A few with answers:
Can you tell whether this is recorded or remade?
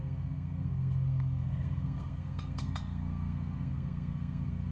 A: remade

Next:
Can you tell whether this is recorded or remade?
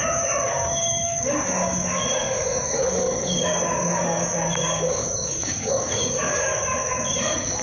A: remade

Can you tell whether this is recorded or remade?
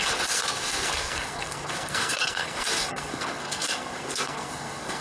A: remade